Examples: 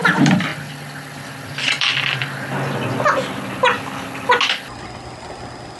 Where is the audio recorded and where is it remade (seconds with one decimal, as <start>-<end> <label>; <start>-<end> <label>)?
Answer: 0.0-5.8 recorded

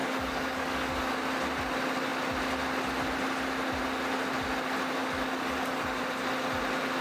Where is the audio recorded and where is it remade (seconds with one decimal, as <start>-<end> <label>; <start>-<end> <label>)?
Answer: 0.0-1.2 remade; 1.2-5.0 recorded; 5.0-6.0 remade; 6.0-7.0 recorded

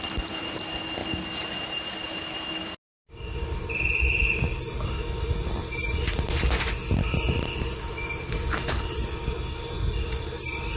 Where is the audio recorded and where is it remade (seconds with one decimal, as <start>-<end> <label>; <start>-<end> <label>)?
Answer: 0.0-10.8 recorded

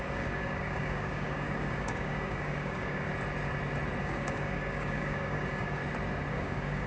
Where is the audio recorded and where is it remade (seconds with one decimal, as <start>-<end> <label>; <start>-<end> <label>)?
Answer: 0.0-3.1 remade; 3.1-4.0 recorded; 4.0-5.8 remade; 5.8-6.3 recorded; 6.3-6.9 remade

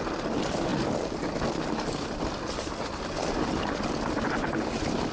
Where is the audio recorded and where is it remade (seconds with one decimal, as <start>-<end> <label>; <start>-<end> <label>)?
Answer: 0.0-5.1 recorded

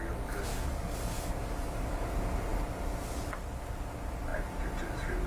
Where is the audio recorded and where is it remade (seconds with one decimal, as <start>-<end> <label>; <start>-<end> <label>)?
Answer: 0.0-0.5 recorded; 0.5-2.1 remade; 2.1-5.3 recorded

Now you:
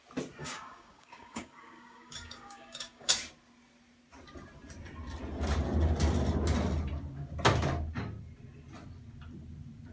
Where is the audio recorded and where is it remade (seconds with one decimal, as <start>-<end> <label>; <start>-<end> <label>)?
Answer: 0.0-0.4 recorded; 0.4-3.1 remade; 3.1-9.9 recorded

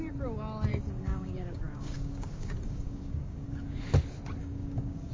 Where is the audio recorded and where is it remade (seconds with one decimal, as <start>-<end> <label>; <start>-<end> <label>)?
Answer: 0.0-0.7 recorded; 0.7-3.8 remade; 3.8-4.4 recorded; 4.4-5.1 remade